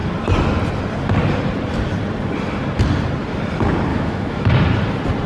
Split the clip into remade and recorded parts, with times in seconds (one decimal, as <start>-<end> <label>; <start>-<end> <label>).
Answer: 0.0-3.9 recorded; 3.9-4.5 remade; 4.5-5.3 recorded